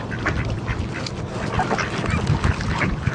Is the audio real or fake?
real